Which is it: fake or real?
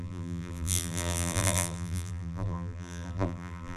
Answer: fake